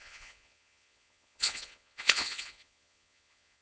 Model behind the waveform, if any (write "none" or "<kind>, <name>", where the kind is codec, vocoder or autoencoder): vocoder, Vocos